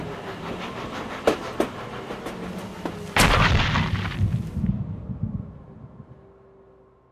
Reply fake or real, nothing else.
real